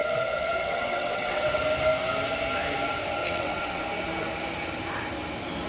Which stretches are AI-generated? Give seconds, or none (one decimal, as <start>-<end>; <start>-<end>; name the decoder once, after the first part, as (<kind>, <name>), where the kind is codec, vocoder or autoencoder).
0.0-1.6 (vocoder, WaveNeXt); 3.2-3.8